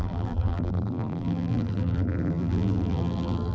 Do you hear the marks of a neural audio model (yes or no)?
yes